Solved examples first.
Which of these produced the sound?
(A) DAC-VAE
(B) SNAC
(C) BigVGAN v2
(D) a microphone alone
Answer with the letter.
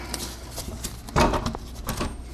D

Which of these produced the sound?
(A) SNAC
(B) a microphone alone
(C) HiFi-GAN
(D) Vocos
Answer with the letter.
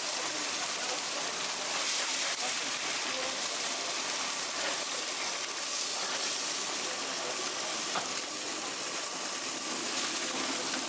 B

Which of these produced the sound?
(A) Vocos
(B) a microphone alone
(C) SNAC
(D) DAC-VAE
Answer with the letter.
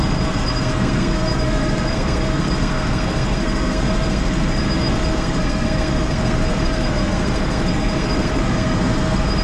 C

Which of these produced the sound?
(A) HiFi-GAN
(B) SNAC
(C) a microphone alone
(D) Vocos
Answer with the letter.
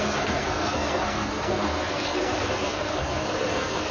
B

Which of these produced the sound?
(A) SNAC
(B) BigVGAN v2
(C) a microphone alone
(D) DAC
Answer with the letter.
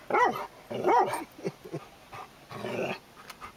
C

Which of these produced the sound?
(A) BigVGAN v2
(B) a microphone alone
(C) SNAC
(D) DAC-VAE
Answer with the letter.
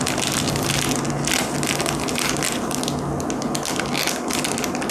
B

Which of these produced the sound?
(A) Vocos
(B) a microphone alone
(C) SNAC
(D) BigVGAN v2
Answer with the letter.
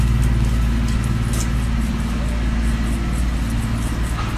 B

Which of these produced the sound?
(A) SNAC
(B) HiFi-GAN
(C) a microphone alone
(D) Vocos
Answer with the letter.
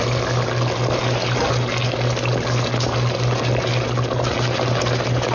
C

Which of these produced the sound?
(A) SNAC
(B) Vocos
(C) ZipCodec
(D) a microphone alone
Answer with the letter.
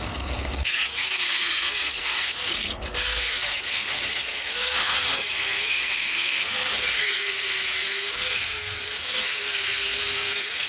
A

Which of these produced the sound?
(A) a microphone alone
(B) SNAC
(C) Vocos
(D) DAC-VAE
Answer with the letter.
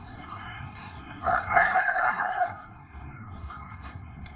B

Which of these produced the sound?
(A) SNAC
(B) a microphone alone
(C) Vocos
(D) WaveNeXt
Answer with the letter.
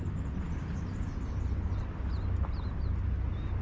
B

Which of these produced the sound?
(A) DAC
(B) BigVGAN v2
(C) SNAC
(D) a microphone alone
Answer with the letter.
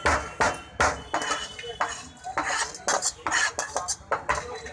D